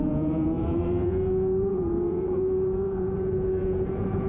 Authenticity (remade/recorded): remade